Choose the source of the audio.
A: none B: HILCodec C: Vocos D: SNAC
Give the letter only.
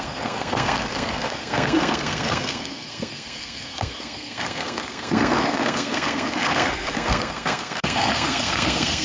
D